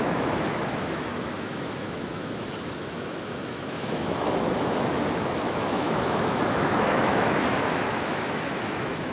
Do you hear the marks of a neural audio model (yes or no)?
yes